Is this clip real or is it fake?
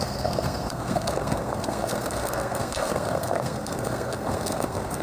fake